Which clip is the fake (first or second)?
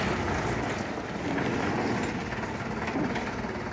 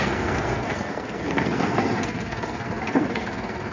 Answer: second